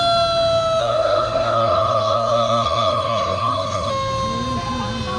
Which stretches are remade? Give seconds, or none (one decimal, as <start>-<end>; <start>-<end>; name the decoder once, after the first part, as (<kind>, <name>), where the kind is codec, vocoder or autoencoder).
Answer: 0.8-3.9 (codec, SNAC)